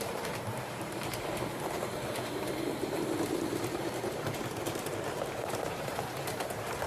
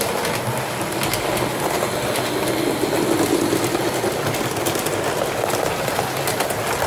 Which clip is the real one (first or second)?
second